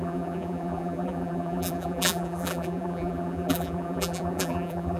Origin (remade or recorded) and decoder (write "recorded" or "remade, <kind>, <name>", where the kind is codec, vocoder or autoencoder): remade, vocoder, BigVGAN v2